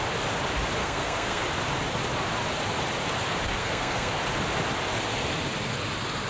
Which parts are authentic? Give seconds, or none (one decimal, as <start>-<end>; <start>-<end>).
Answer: 0.0-0.8; 1.4-3.6; 4.1-6.3